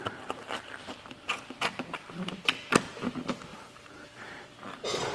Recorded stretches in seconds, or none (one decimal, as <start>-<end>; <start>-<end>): 0.0-0.8; 1.5-3.5; 4.5-5.1

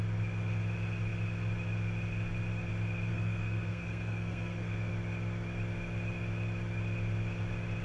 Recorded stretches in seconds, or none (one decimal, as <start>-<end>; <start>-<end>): 0.0-3.1; 4.9-7.8

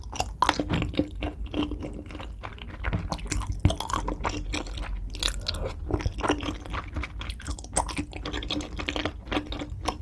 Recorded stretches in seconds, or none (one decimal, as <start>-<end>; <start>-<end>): 0.0-10.0

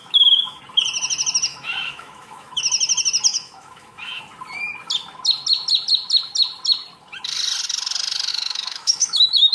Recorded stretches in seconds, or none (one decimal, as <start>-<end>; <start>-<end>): 0.6-1.5; 2.6-3.3; 4.2-8.3

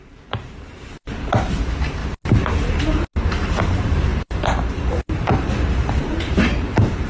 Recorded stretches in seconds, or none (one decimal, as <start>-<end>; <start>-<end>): none

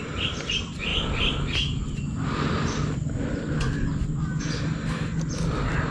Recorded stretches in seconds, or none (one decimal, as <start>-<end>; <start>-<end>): 0.0-5.9